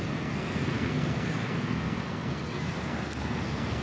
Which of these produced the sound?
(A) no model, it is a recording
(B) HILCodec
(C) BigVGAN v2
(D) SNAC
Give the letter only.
D